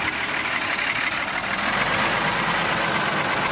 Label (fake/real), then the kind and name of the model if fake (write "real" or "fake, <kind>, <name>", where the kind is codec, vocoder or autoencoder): real